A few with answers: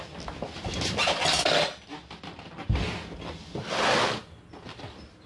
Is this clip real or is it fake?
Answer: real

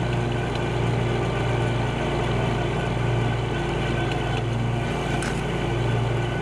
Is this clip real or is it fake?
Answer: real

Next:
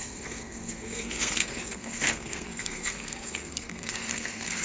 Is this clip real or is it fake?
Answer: fake